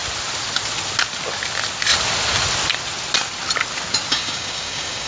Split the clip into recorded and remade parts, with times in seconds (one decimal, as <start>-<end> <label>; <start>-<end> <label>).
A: 0.0-4.1 recorded; 4.1-5.1 remade